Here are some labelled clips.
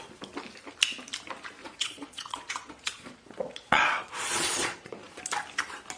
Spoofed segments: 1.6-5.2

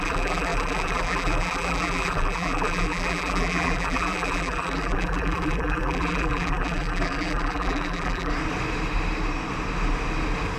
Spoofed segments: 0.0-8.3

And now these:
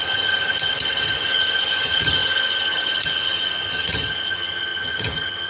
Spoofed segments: 0.0-5.5